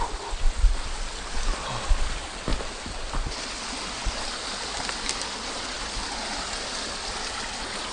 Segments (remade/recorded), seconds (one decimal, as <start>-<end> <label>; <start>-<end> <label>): 0.0-7.9 recorded